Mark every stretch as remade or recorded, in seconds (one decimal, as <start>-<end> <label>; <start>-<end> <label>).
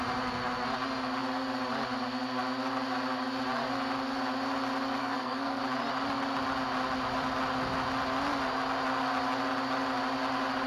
0.0-5.0 recorded; 5.0-5.6 remade; 5.6-10.7 recorded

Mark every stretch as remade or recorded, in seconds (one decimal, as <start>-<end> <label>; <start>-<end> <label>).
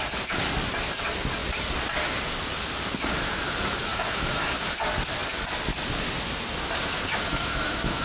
0.0-3.9 recorded; 3.9-4.8 remade; 4.8-7.3 recorded; 7.3-8.0 remade